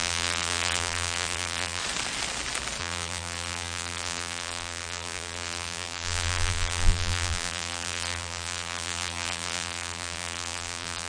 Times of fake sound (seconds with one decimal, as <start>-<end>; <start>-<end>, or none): 0.0-1.8; 2.8-11.1